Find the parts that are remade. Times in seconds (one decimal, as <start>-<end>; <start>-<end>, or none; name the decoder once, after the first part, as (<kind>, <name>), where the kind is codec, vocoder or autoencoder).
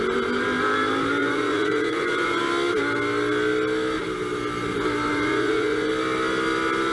1.2-2.4 (vocoder, Vocos); 5.1-5.9